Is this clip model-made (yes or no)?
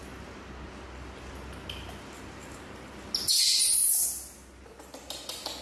no